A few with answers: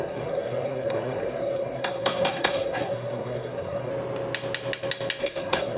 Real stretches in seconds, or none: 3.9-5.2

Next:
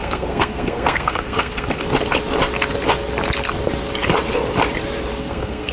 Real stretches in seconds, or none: 1.8-5.2

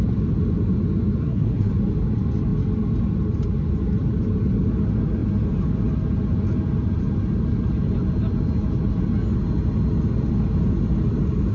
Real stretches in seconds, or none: 0.0-1.2; 1.7-11.5

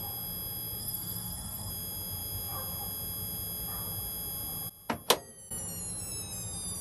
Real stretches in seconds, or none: 0.0-0.8; 1.7-6.8